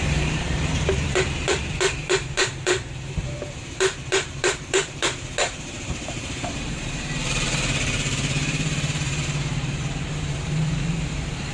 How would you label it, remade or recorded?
remade